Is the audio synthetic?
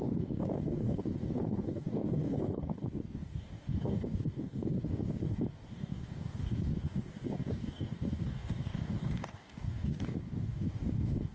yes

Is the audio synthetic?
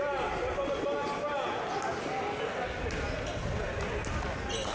no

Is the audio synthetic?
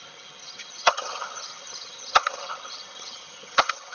yes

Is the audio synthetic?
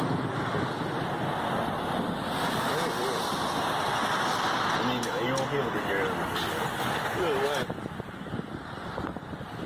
no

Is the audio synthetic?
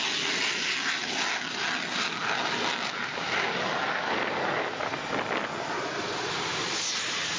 no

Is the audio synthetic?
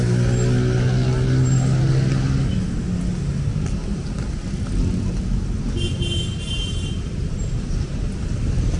no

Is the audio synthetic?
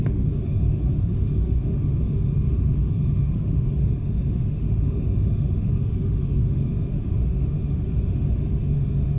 yes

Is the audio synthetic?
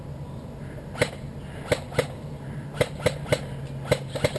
no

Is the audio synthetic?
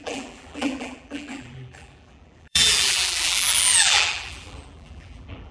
yes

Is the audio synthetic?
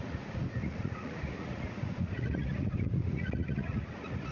yes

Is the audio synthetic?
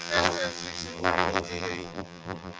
yes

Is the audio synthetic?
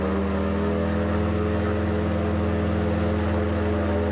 no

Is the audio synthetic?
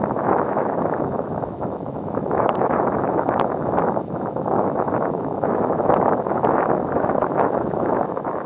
yes